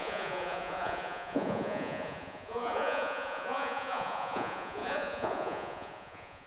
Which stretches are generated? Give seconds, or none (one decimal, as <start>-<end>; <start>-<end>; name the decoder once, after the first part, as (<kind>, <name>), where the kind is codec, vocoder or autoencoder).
0.0-6.5 (vocoder, Vocos)